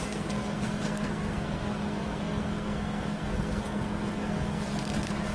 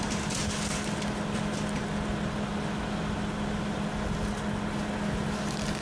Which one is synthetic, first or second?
first